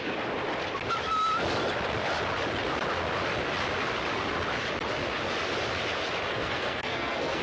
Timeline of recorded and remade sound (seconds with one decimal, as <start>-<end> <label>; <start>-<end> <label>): 0.0-6.3 recorded; 6.3-7.4 remade

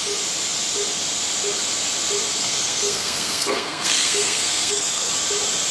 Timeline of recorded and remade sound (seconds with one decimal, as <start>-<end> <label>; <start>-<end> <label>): 0.0-2.4 recorded; 2.4-5.1 remade; 5.1-5.7 recorded

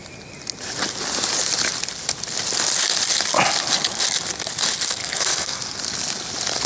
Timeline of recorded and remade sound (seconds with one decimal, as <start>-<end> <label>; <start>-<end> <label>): 0.0-5.0 recorded; 5.0-5.6 remade; 5.6-6.7 recorded

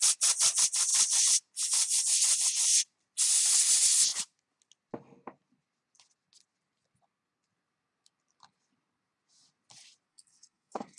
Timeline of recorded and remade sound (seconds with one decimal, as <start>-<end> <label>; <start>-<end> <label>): 0.0-10.1 recorded; 10.1-11.0 remade

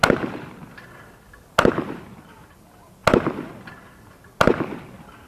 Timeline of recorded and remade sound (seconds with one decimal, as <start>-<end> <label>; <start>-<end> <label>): 0.0-5.3 recorded

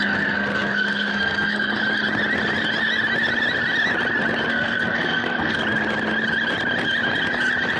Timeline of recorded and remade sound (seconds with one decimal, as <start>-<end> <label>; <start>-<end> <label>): 0.0-1.8 remade; 1.8-4.5 recorded; 4.5-5.6 remade; 5.6-7.8 recorded

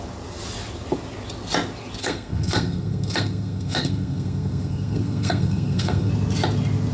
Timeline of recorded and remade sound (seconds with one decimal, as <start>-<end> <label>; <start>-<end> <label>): 0.0-2.0 recorded; 2.0-6.1 remade; 6.1-6.9 recorded

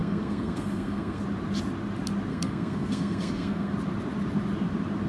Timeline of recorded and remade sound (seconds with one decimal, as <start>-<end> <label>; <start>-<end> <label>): 0.0-1.2 remade; 1.2-2.3 recorded; 2.3-3.7 remade; 3.7-5.1 recorded